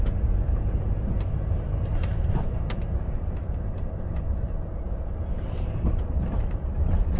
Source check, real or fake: fake